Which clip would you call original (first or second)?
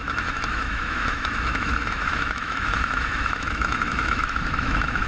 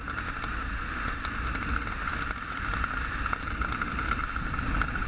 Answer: second